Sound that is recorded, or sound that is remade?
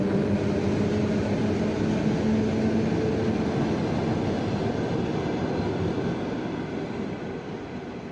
recorded